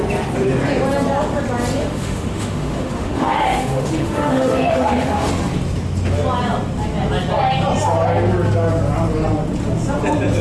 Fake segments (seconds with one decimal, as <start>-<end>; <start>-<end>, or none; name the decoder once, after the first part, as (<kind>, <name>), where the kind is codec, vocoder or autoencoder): 1.8-5.3 (autoencoder, DAC-VAE)